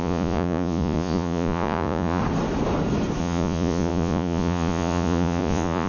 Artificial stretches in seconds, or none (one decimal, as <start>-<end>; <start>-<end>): 0.0-2.2; 3.2-5.9